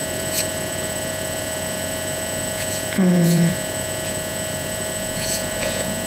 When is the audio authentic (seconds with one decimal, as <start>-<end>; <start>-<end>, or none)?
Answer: none